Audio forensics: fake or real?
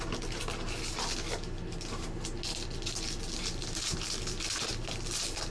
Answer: real